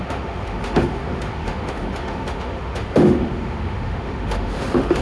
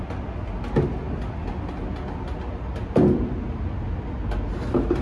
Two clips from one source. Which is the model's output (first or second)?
first